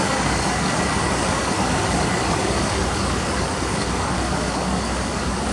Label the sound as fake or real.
fake